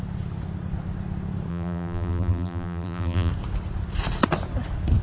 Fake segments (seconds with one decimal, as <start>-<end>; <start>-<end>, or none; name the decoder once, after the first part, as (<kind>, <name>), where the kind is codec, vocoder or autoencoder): 1.5-3.3 (vocoder, BigVGAN v2)